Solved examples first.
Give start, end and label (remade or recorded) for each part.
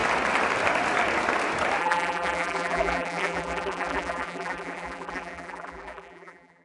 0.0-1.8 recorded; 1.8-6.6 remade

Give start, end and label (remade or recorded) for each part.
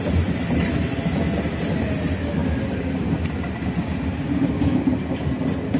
0.0-5.8 recorded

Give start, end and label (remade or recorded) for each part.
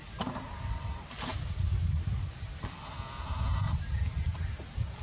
0.0-5.0 recorded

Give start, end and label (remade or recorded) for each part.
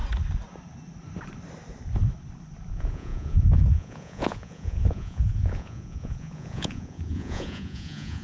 0.0-2.7 recorded; 2.7-8.2 remade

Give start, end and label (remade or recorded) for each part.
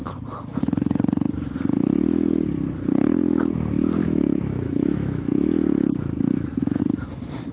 0.0-4.0 recorded; 4.0-6.8 remade; 6.8-7.5 recorded